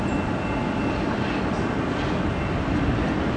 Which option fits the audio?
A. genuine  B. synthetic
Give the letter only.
A